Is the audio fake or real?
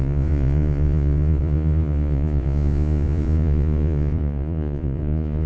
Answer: fake